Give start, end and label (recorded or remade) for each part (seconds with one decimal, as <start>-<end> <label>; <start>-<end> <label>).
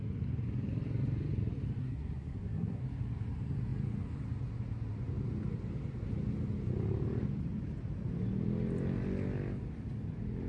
0.0-1.8 recorded; 1.8-2.8 remade; 2.8-10.5 recorded